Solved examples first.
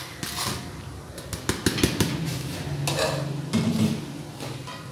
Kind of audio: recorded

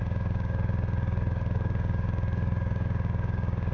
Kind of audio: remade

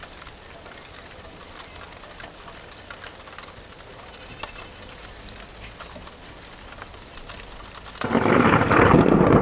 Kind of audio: recorded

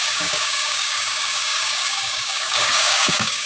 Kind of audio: remade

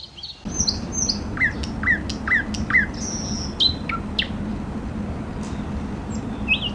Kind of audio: recorded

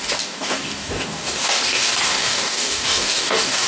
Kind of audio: remade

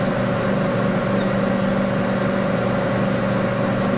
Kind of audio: recorded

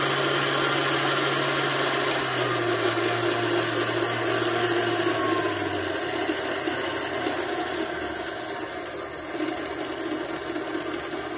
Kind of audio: recorded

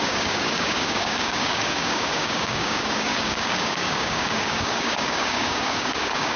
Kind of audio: remade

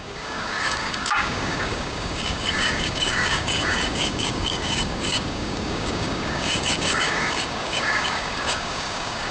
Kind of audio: remade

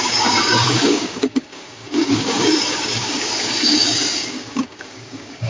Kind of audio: remade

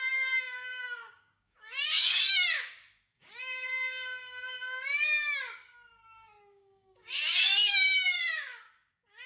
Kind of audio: remade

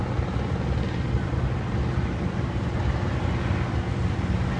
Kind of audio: recorded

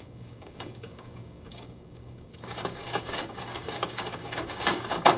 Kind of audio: remade